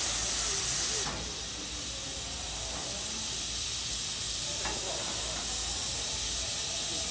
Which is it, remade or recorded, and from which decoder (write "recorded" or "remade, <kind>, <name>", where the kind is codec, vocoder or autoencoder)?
recorded